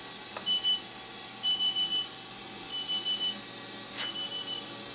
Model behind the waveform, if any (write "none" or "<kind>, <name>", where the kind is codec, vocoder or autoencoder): none